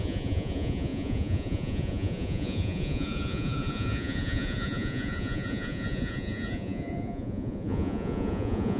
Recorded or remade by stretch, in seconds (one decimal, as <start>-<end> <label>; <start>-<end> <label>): 0.0-8.8 remade